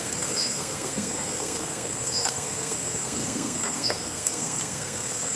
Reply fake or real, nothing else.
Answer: fake